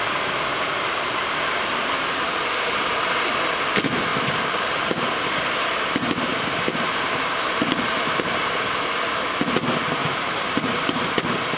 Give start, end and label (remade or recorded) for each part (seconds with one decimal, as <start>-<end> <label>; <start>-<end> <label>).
0.0-0.5 recorded; 0.5-2.3 remade; 2.3-4.1 recorded; 4.1-4.8 remade; 4.8-6.3 recorded; 6.3-8.6 remade; 8.6-10.0 recorded; 10.0-11.1 remade; 11.1-11.6 recorded